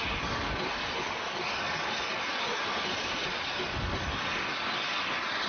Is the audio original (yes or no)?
yes